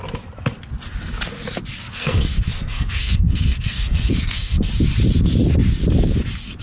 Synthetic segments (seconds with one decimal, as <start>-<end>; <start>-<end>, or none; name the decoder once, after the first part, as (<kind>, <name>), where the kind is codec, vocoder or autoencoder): 1.9-4.7 (codec, SNAC)